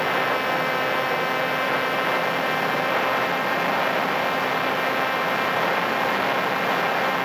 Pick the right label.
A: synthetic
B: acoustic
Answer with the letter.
B